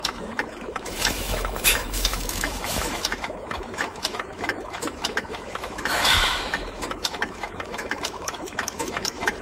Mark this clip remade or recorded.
remade